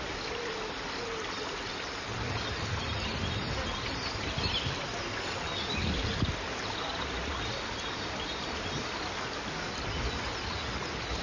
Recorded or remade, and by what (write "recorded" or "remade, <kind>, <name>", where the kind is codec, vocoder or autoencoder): recorded